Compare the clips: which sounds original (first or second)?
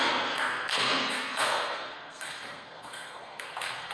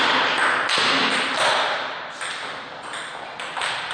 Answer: second